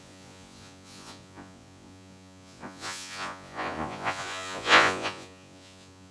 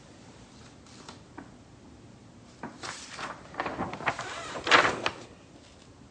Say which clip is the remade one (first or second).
first